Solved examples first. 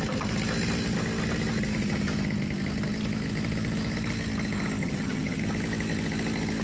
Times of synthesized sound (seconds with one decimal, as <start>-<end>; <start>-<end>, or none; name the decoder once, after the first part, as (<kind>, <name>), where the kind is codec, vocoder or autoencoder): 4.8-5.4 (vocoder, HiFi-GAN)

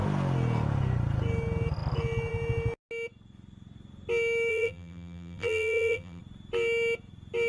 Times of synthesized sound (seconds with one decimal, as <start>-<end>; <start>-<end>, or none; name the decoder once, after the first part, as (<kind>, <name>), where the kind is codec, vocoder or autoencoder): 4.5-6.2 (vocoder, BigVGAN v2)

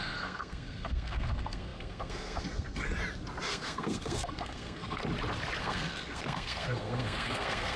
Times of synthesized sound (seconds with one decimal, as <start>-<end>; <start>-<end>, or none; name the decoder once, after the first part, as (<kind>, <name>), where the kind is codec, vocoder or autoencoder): 0.0-2.9 (codec, SNAC); 3.5-5.0; 5.6-7.8